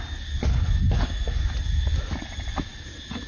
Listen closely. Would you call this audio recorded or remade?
recorded